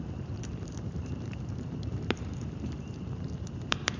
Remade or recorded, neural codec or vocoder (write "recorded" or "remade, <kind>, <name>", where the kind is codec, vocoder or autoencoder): remade, vocoder, BigVGAN v2